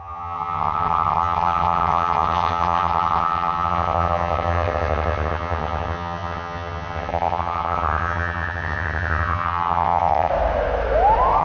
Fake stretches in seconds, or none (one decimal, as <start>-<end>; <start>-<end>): 0.0-10.3

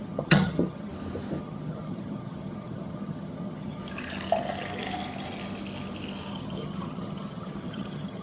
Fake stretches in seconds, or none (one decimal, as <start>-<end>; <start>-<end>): 0.0-0.9; 1.4-3.8; 6.3-8.2

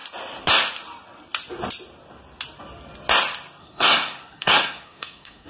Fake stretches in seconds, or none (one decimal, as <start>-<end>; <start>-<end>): 3.6-5.5

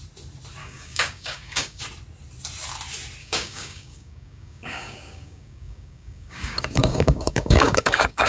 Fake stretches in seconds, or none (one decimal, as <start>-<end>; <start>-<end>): 0.6-1.8; 3.2-8.3